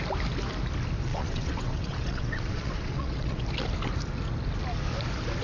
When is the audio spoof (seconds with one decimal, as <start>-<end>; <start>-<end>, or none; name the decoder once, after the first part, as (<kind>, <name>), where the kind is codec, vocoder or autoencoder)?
1.1-3.4 (vocoder, WaveNeXt)

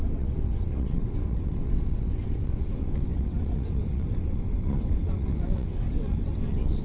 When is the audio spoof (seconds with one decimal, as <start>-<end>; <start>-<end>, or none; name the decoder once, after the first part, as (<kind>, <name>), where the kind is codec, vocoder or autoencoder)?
0.0-6.8 (vocoder, WaveNeXt)

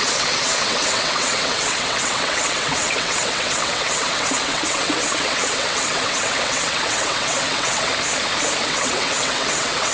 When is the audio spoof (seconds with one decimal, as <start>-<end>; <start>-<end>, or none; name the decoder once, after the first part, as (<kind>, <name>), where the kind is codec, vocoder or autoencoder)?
0.0-7.9 (vocoder, WaveNeXt); 8.6-9.9

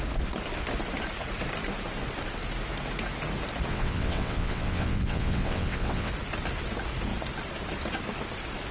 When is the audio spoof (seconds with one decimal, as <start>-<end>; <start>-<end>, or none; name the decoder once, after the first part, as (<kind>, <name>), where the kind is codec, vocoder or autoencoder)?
3.7-6.1 (vocoder, WaveNeXt)